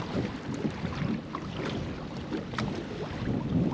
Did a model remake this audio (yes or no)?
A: no